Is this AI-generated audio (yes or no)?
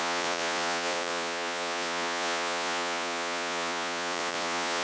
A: yes